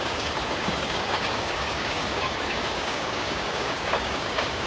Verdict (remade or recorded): remade